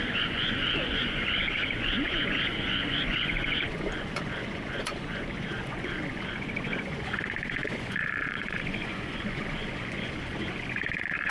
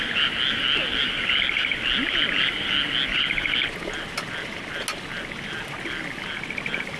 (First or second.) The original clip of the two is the second